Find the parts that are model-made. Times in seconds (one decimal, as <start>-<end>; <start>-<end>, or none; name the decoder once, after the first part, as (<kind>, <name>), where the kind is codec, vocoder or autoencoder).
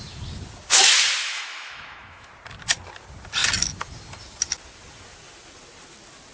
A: 1.2-2.3 (autoencoder, DAC-VAE)